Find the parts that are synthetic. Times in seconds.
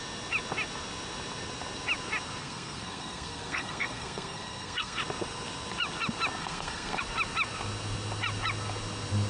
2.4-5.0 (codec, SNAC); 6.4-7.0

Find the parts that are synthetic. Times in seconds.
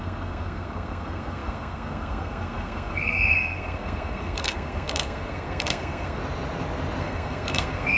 0.0-6.2 (codec, SNAC); 7.0-8.0